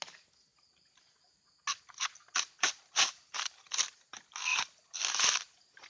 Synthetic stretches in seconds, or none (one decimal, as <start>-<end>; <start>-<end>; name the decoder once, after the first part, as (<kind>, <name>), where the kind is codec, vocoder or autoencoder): none